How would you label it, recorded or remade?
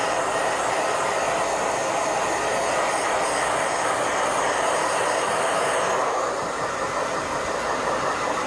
recorded